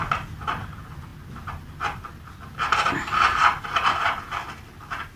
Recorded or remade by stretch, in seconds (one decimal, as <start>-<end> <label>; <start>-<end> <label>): 0.0-5.2 recorded

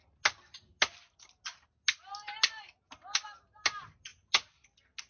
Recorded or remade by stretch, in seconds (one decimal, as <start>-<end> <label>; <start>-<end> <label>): 0.0-5.1 recorded